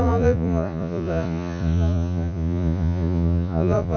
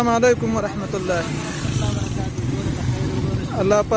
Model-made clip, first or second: first